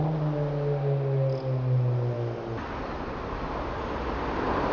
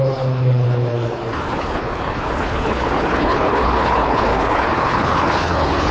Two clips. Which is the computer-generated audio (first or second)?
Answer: second